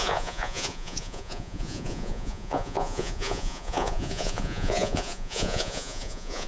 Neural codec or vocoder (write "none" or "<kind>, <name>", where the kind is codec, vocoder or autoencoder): vocoder, Vocos